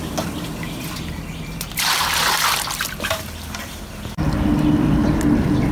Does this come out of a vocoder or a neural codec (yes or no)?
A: no